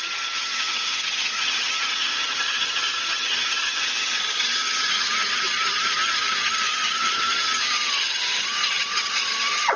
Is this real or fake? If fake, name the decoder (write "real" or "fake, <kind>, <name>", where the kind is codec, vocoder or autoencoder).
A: fake, vocoder, HiFi-GAN